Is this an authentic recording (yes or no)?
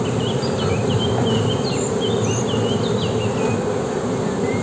yes